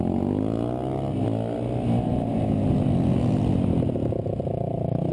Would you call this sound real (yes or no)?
yes